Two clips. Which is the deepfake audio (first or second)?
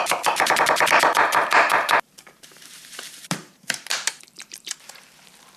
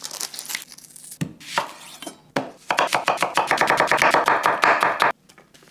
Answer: first